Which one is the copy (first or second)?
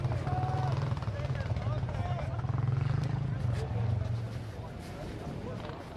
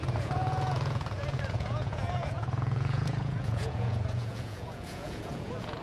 second